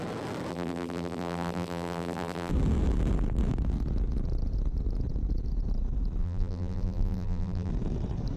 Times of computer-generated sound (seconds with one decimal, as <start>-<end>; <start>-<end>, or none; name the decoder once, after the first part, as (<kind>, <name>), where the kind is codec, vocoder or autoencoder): 0.5-2.5 (vocoder, BigVGAN v2); 6.2-7.7